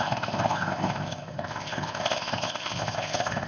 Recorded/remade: remade